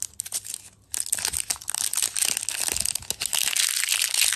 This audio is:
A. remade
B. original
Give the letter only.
B